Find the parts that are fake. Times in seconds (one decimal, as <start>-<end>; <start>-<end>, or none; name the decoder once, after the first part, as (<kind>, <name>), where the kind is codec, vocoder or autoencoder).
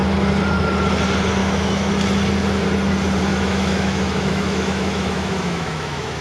1.4-1.9 (autoencoder, DAC-VAE); 3.3-6.2